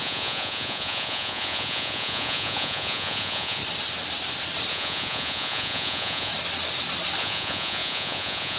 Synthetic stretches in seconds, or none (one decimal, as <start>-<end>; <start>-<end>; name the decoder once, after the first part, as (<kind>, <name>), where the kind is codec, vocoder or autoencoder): 0.0-3.6 (vocoder, Vocos); 4.7-6.3; 7.2-8.6

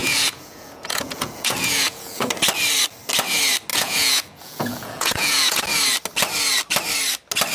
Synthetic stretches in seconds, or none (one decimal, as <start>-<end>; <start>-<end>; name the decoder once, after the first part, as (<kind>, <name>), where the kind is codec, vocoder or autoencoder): 0.0-2.3 (vocoder, Vocos); 3.7-5.6

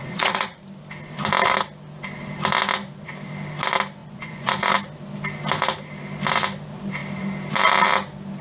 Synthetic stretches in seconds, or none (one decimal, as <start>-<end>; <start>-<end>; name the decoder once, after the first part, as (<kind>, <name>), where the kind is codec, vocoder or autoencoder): 0.0-0.6 (vocoder, Vocos); 4.0-4.7

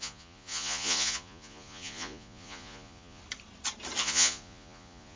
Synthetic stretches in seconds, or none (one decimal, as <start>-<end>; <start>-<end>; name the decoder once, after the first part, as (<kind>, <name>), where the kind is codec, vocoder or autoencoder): 0.0-3.2 (vocoder, Vocos); 4.0-5.2

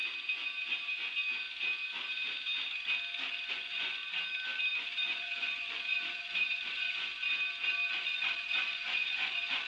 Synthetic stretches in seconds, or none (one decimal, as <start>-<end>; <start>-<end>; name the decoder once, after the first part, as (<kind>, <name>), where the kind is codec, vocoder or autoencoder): 3.5-4.0 (vocoder, Vocos); 4.8-7.1; 7.9-9.7